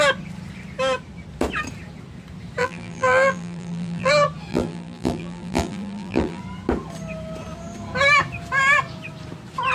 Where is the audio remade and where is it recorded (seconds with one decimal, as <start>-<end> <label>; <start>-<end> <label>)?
0.0-2.6 recorded; 2.6-4.1 remade; 4.1-4.5 recorded; 4.5-6.4 remade; 6.4-9.7 recorded